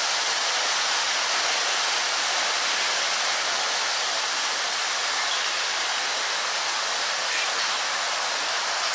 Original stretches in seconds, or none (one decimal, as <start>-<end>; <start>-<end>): 0.0-8.9